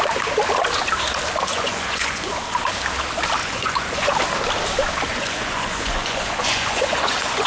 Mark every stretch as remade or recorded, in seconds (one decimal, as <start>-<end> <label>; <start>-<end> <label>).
0.0-1.5 recorded; 1.5-2.3 remade; 2.3-3.4 recorded; 3.4-4.1 remade; 4.1-5.1 recorded; 5.1-7.5 remade